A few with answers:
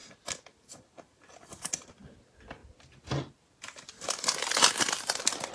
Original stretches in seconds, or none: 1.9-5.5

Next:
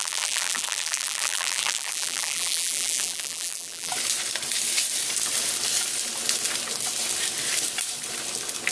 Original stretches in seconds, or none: 3.9-8.7

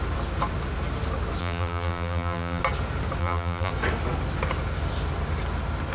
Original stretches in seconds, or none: 0.0-1.4; 2.6-3.2; 3.7-5.9

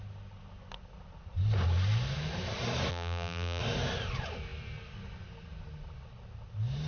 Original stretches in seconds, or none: 0.0-2.9; 3.6-6.9